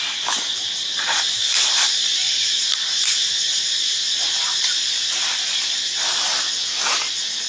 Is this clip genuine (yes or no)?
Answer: no